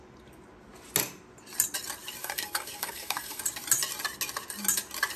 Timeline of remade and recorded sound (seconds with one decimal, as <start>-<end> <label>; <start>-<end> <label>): 0.0-2.2 recorded; 2.2-3.4 remade; 3.4-5.2 recorded